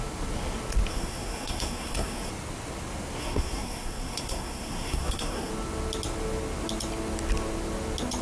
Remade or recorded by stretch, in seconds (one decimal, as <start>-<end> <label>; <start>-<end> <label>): 0.0-0.9 recorded; 0.9-2.3 remade; 2.3-3.2 recorded; 3.2-5.5 remade; 5.5-8.2 recorded